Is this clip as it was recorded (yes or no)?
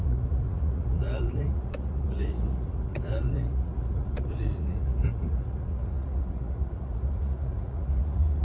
no